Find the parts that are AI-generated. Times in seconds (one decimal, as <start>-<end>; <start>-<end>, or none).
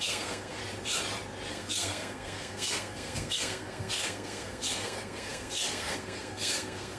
0.0-0.6; 1.5-7.0